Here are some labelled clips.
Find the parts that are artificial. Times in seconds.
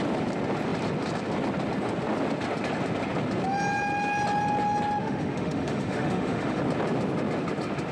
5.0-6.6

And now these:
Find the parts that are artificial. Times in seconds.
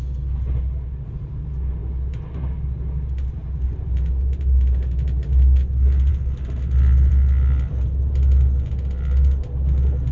none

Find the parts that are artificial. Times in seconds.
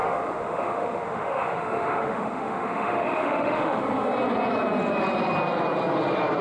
0.0-3.8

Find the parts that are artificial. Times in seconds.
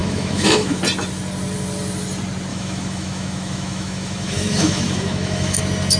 0.0-0.8; 2.5-5.6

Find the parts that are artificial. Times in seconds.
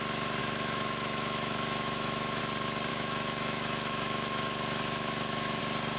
0.4-2.4; 2.9-5.6